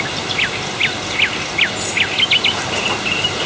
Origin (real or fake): real